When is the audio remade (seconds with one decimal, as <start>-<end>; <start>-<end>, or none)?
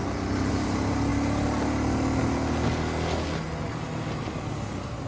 none